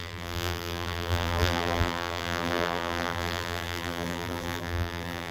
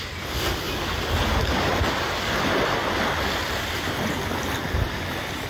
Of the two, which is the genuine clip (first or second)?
second